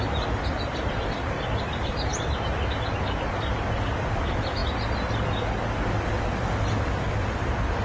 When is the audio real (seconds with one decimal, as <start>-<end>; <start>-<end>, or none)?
2.1-4.0; 4.6-5.9